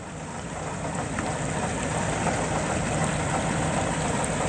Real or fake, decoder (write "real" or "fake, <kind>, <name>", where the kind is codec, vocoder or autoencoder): real